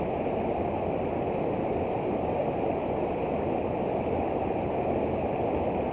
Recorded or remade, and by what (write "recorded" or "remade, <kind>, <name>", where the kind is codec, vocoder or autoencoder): recorded